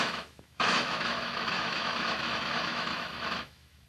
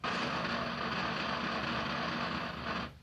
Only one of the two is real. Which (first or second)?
second